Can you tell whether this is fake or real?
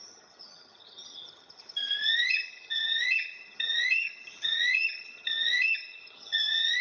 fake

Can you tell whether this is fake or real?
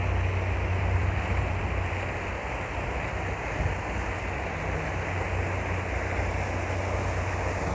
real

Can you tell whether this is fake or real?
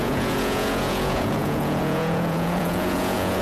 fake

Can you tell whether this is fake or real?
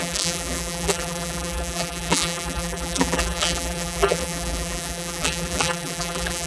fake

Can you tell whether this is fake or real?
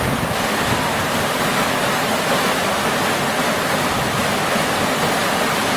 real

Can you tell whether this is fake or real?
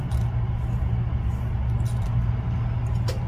real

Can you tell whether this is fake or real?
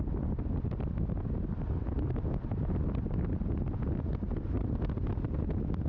real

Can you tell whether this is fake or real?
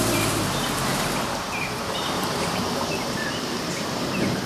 fake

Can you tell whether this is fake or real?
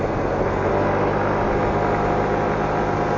real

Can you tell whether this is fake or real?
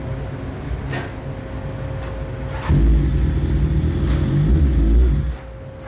real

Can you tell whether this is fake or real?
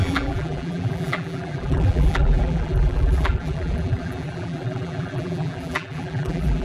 fake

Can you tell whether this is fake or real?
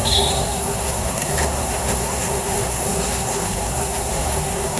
fake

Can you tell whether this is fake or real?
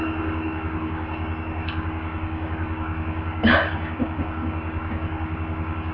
fake